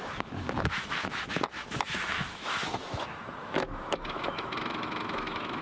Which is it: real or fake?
fake